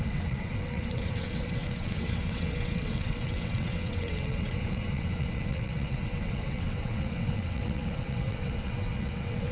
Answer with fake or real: fake